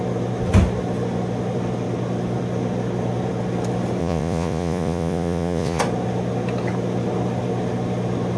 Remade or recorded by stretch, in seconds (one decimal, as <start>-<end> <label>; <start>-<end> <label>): 0.0-4.0 recorded; 4.0-5.8 remade; 5.8-8.4 recorded